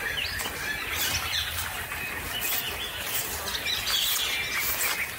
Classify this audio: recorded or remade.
recorded